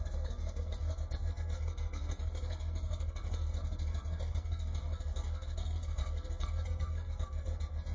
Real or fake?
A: fake